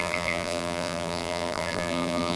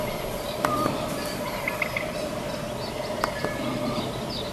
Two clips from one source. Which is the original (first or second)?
second